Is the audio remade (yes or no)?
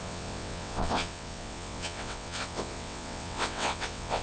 yes